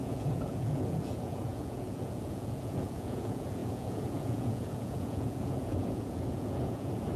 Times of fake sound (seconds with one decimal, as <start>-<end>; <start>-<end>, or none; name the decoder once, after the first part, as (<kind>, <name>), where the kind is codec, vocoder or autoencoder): 0.0-7.2 (vocoder, Vocos)